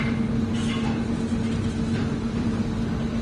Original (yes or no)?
yes